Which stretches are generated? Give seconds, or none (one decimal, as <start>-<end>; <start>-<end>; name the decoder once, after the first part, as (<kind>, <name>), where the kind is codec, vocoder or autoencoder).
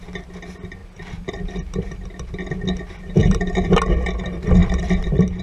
0.8-1.3 (vocoder, BigVGAN v2); 3.2-3.8; 4.6-5.4